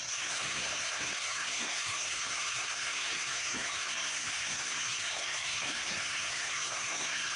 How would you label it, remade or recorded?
remade